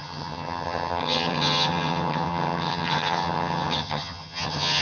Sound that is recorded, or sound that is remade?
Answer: remade